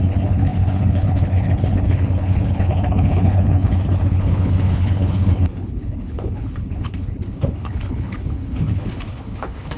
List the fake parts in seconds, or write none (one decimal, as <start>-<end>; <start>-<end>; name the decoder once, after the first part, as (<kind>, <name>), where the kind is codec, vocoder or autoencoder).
0.0-9.8 (codec, HILCodec)